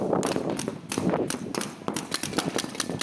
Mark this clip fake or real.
real